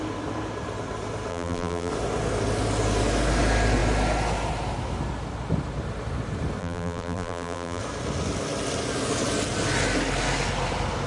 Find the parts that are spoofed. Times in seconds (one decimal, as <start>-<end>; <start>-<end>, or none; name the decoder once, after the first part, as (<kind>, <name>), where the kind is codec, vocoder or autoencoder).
1.3-1.9 (vocoder, BigVGAN v2); 6.6-7.8